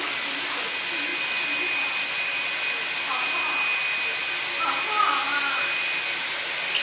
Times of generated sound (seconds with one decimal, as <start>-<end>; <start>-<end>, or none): none